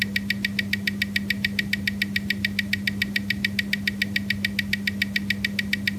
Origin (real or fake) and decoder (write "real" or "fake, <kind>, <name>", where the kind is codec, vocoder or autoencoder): real